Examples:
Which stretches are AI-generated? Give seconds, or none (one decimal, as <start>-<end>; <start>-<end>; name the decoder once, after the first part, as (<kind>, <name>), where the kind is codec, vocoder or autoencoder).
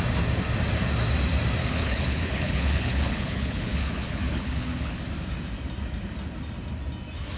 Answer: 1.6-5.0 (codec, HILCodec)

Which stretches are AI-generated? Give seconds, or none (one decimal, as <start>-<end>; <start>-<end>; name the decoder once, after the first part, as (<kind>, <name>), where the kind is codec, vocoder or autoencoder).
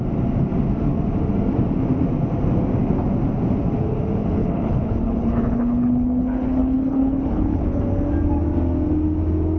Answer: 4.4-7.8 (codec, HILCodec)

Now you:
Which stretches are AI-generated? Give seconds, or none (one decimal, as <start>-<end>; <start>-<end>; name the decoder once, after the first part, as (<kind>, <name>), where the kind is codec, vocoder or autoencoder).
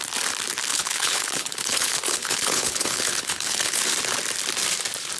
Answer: 0.7-3.8 (codec, HILCodec)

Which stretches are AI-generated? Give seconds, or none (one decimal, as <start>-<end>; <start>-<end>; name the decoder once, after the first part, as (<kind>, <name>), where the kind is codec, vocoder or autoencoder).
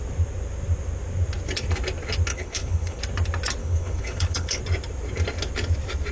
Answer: 2.3-3.0 (codec, HILCodec); 3.6-4.6